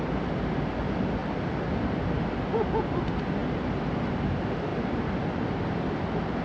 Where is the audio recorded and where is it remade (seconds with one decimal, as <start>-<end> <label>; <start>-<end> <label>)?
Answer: 0.0-6.4 recorded